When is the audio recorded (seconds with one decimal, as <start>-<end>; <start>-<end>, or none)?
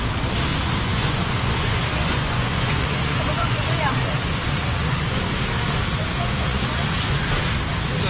0.0-0.5; 5.3-6.0; 7.3-8.1